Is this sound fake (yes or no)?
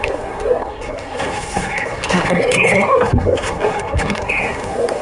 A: yes